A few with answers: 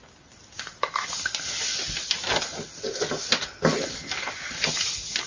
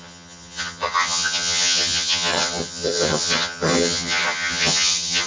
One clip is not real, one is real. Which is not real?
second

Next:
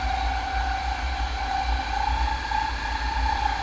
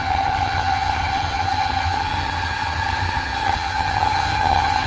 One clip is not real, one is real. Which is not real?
second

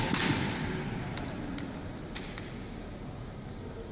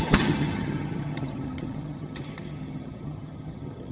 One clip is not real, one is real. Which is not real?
second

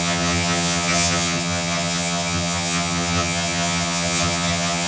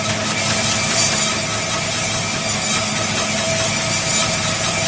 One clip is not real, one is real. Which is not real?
first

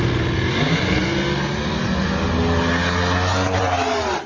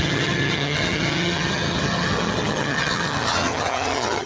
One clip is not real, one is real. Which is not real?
second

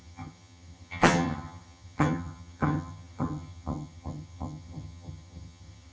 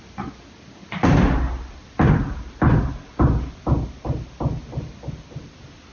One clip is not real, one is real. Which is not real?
first